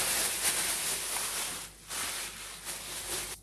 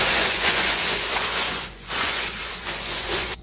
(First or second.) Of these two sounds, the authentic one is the first